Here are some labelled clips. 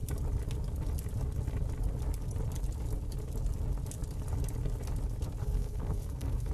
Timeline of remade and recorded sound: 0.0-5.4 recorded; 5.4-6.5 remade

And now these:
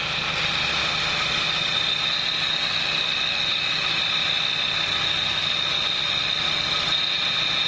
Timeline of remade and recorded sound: 0.0-7.7 recorded

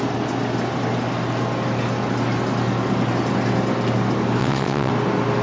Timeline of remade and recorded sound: 0.0-4.4 recorded; 4.4-4.9 remade; 4.9-5.4 recorded